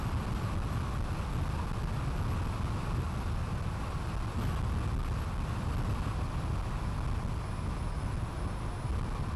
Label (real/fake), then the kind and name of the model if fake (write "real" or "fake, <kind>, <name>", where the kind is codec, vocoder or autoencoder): real